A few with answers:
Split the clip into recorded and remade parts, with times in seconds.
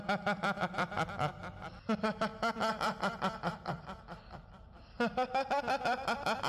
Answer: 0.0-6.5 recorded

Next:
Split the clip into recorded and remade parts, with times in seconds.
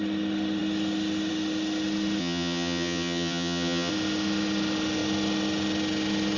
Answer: 0.0-2.2 recorded; 2.2-3.9 remade; 3.9-6.4 recorded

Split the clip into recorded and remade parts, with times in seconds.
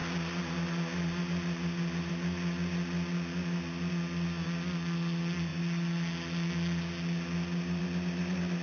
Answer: 0.0-8.6 recorded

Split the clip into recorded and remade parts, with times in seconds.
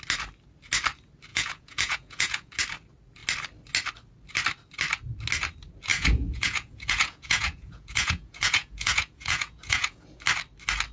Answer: 0.0-1.3 recorded; 1.3-2.6 remade; 2.6-5.9 recorded; 5.9-10.2 remade; 10.2-10.9 recorded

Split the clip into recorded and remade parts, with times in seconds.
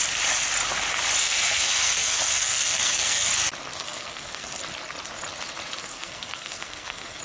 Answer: 0.0-1.2 recorded; 1.2-3.3 remade; 3.3-3.7 recorded; 3.7-4.6 remade; 4.6-5.8 recorded; 5.8-7.2 remade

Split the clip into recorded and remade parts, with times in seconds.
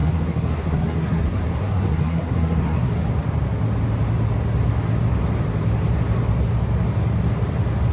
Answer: 0.0-2.9 remade; 2.9-7.9 recorded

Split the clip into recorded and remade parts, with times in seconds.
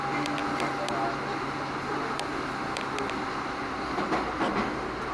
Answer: 0.0-5.1 recorded